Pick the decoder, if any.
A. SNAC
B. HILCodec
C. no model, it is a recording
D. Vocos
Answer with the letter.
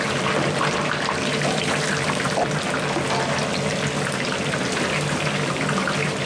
C